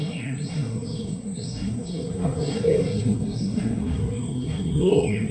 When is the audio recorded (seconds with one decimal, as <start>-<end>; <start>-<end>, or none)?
none